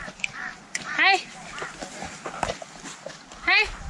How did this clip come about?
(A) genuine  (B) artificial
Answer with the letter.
A